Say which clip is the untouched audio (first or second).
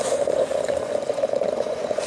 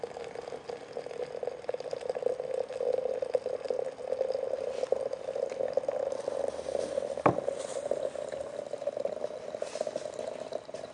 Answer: second